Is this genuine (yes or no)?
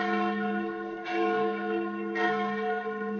no